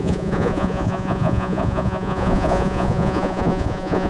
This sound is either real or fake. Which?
fake